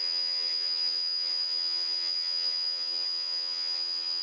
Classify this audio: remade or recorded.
remade